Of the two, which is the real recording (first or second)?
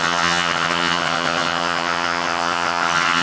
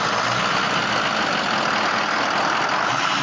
second